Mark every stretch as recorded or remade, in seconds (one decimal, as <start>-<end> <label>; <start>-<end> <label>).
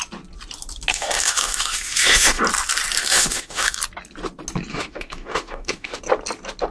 0.0-0.9 recorded; 0.9-2.4 remade; 2.4-3.0 recorded; 3.0-3.8 remade; 3.8-4.7 recorded; 4.7-6.0 remade; 6.0-6.7 recorded